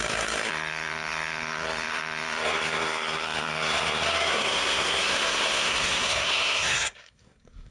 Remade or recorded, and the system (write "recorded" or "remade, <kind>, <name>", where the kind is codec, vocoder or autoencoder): remade, codec, SNAC